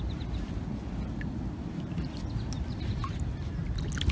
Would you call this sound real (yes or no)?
yes